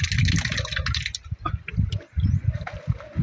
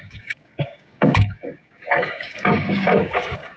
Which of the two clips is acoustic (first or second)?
first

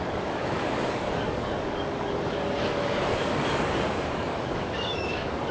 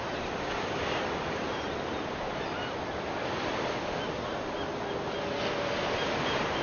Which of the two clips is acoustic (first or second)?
second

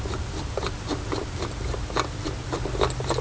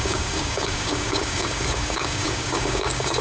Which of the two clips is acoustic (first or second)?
first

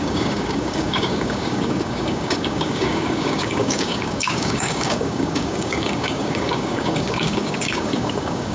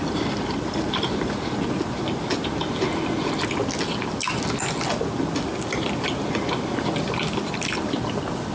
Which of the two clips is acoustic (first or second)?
second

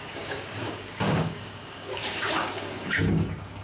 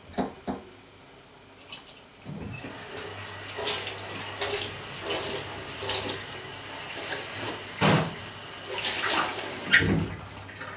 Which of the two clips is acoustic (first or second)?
second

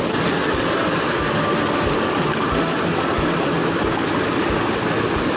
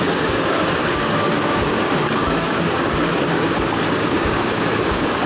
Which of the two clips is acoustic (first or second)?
first